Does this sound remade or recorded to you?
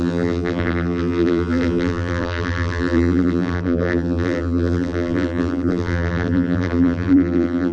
remade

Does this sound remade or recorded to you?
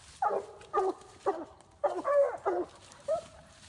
remade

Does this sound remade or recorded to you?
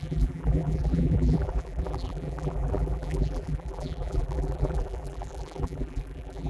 remade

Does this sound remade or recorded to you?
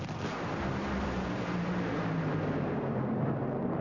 remade